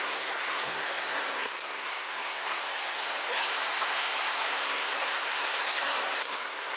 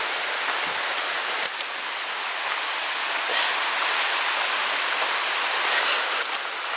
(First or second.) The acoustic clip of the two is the second